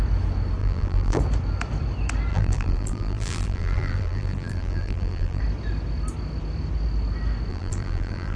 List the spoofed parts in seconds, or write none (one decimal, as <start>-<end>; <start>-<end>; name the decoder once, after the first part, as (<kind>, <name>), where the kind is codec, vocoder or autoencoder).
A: 0.6-1.2 (vocoder, BigVGAN v2); 2.3-5.4; 7.5-8.4